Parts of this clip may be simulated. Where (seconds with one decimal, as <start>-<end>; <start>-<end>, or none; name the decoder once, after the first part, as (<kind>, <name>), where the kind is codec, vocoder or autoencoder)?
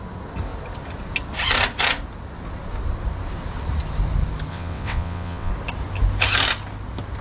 4.5-5.5 (vocoder, WaveNeXt)